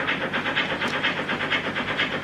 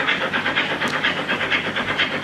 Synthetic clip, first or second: second